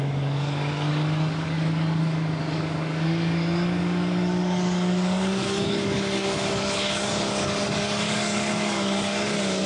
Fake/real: fake